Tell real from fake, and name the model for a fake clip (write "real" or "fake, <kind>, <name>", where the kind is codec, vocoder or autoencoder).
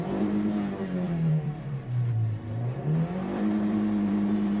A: fake, vocoder, BigVGAN v2